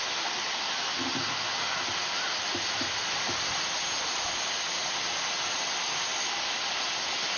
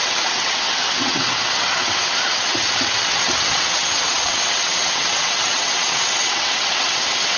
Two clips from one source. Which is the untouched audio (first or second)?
first